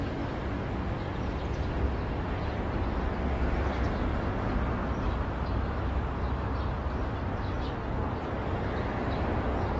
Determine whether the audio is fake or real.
real